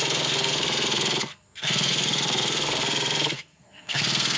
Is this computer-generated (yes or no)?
yes